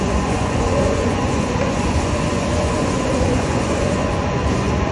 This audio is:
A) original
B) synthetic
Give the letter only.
B